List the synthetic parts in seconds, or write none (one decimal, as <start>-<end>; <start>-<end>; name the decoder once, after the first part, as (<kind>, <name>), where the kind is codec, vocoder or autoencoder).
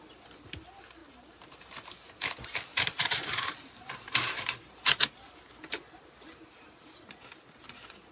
1.0-1.6 (vocoder, BigVGAN v2); 2.7-4.9